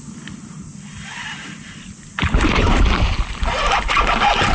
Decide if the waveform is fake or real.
real